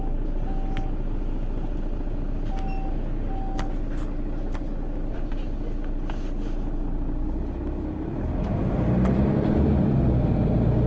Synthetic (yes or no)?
no